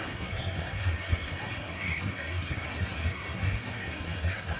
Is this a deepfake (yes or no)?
yes